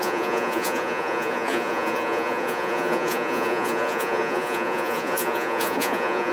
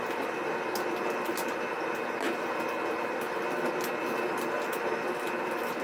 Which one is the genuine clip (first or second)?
second